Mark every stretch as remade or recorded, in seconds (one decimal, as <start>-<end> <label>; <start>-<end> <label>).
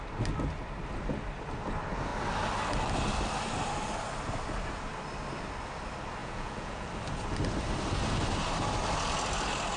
0.0-6.2 recorded; 6.2-6.9 remade; 6.9-9.8 recorded